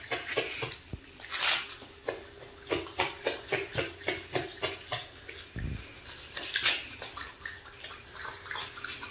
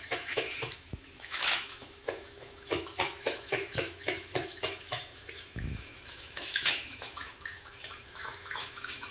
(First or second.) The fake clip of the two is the second